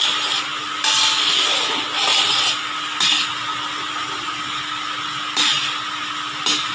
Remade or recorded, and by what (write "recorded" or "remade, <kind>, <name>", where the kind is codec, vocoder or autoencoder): recorded